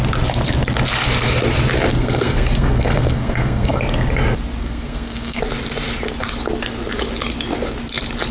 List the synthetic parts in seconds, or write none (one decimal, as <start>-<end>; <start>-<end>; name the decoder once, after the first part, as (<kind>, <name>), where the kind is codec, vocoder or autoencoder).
1.9-3.8 (codec, SNAC); 4.6-5.4